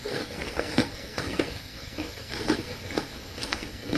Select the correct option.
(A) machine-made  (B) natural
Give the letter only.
A